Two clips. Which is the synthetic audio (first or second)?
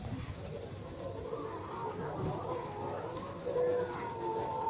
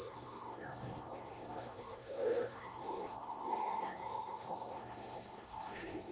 second